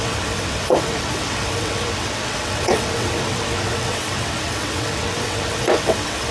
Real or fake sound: fake